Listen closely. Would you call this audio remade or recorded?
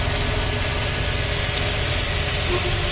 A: recorded